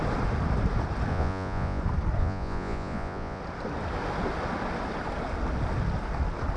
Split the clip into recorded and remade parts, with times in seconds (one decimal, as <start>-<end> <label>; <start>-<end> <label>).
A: 0.0-1.1 recorded; 1.1-1.8 remade; 1.8-2.2 recorded; 2.2-3.4 remade; 3.4-6.6 recorded